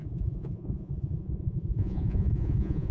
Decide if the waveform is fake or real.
fake